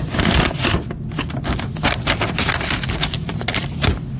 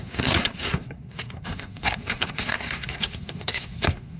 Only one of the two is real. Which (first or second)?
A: first